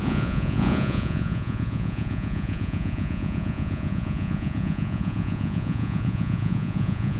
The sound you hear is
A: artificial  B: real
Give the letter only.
A